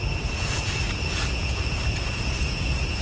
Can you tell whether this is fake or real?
fake